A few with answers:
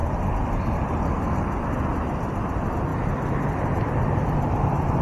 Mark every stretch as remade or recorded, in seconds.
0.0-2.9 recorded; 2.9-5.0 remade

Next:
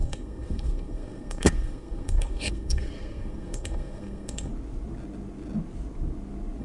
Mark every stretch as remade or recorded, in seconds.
0.0-4.5 remade; 4.5-6.6 recorded

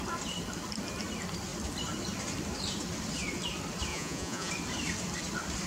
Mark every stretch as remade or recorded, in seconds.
0.0-3.9 recorded; 3.9-4.5 remade; 4.5-5.7 recorded

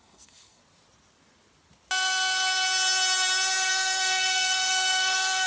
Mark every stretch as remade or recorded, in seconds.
0.0-0.6 remade; 0.6-3.7 recorded; 3.7-5.5 remade

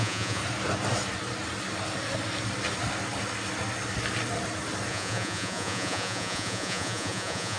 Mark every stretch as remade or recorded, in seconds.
0.0-0.4 remade; 0.4-4.9 recorded; 4.9-7.6 remade

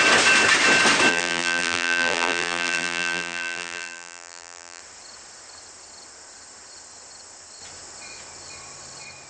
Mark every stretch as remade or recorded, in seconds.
0.0-1.1 recorded; 1.1-4.8 remade; 4.8-9.3 recorded